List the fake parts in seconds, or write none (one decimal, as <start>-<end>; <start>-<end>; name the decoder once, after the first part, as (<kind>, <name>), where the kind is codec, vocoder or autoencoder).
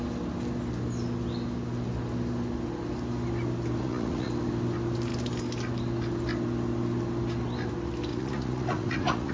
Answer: 3.8-4.3 (vocoder, Vocos); 8.1-9.3